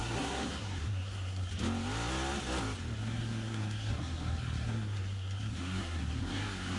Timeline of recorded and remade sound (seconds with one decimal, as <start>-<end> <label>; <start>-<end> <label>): 0.0-1.5 remade; 1.5-3.0 recorded; 3.0-6.8 remade